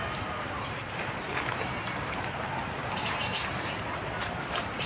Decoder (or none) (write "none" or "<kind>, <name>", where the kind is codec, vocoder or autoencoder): vocoder, BigVGAN v2